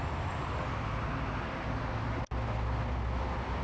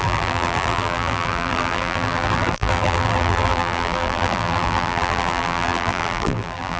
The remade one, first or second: second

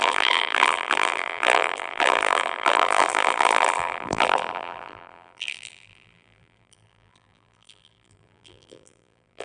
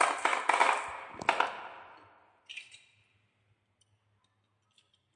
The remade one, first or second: first